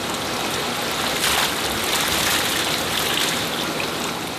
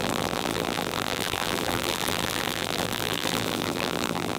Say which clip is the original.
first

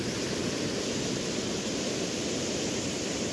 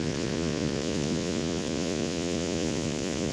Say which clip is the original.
first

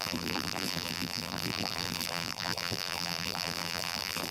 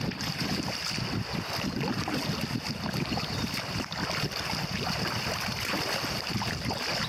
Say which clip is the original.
second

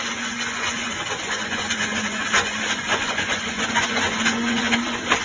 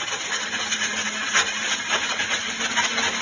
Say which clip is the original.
second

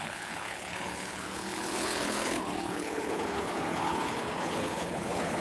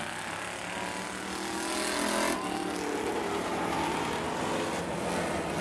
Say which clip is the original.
second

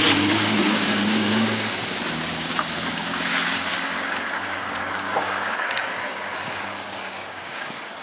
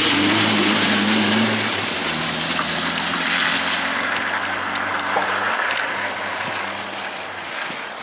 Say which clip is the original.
second